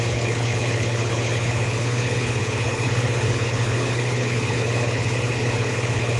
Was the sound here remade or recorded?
remade